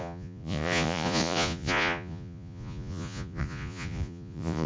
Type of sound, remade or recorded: remade